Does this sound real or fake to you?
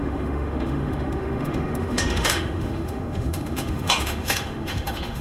fake